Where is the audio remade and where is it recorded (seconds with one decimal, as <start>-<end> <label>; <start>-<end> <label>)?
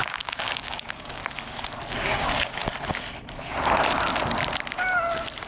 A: 0.0-1.2 remade; 1.2-1.9 recorded; 1.9-2.6 remade; 2.6-5.5 recorded